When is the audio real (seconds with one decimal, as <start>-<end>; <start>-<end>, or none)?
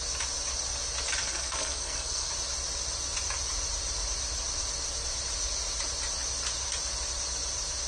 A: 0.0-1.2; 2.3-7.9